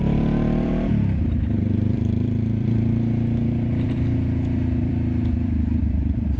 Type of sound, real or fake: fake